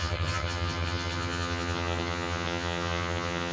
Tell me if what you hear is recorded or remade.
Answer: remade